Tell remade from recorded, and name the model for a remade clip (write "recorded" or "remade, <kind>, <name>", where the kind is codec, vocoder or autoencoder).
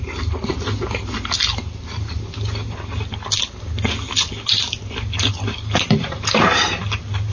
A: recorded